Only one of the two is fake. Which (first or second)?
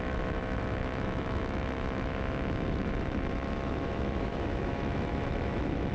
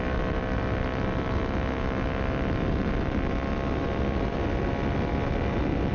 first